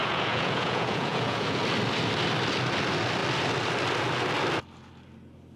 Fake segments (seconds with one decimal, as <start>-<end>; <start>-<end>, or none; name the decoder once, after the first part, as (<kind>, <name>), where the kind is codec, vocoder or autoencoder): 0.0-1.6 (vocoder, Vocos)